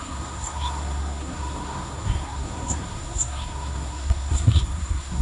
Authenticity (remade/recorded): remade